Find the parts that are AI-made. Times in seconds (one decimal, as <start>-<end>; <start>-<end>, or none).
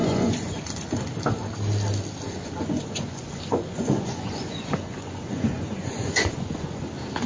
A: 0.0-0.6; 2.4-6.8